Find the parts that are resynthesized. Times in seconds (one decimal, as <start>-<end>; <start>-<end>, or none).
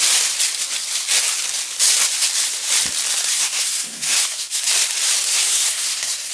3.3-4.6; 5.3-6.3